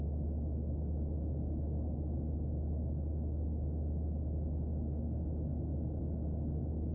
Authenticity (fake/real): real